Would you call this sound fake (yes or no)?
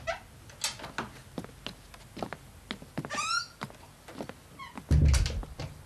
no